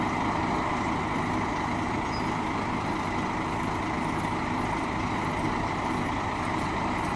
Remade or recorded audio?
recorded